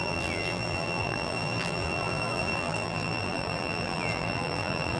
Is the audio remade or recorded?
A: remade